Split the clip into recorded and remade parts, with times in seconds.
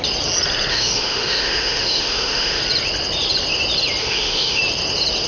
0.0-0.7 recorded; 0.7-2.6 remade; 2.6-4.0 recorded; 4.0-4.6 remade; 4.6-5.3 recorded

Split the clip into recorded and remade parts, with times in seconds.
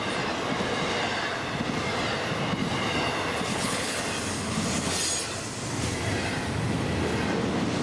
0.0-3.5 recorded; 3.5-4.0 remade; 4.0-7.8 recorded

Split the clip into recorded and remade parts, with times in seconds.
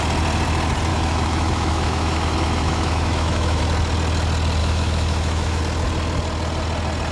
0.0-0.9 recorded; 0.9-3.6 remade; 3.6-4.6 recorded; 4.6-5.6 remade; 5.6-7.1 recorded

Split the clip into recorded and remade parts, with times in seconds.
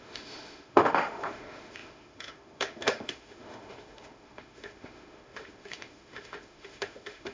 0.0-7.3 remade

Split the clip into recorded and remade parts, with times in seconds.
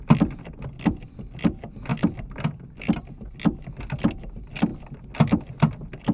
0.0-6.1 recorded